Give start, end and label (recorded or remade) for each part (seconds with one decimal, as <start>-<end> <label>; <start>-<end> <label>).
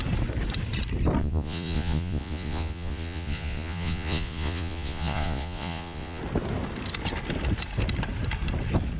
0.0-1.2 recorded; 1.2-6.2 remade; 6.2-9.0 recorded